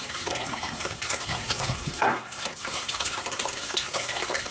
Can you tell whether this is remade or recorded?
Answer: remade